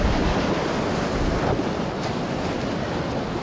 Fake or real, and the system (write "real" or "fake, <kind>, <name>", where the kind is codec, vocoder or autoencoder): real